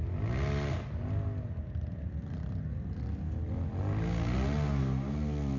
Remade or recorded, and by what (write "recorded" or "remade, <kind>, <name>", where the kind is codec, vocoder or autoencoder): recorded